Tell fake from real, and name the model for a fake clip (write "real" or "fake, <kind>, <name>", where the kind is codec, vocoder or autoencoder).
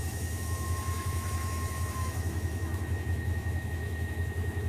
fake, autoencoder, DAC-VAE